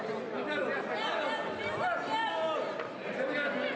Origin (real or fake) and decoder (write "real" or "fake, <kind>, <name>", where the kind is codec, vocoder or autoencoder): real